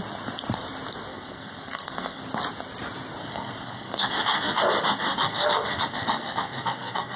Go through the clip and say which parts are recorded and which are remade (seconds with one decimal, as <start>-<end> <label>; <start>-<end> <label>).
0.0-1.1 recorded; 1.1-2.2 remade; 2.2-3.2 recorded; 3.2-4.6 remade; 4.6-5.1 recorded; 5.1-7.2 remade